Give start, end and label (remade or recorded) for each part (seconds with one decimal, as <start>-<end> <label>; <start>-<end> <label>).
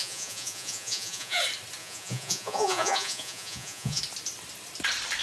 0.0-1.4 remade; 1.4-1.8 recorded; 1.8-4.0 remade; 4.0-5.2 recorded